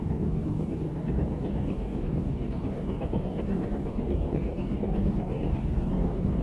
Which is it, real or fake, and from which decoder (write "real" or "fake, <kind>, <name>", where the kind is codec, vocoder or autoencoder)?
fake, codec, DAC